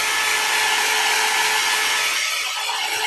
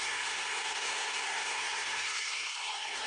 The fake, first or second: second